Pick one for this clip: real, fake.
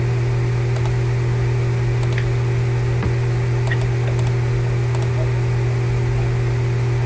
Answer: real